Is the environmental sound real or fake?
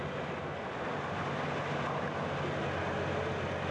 real